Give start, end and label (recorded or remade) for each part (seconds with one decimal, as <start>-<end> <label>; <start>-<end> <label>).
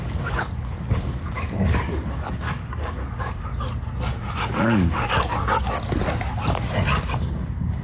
0.0-3.5 remade; 3.5-4.4 recorded; 4.4-5.3 remade; 5.3-7.2 recorded; 7.2-7.8 remade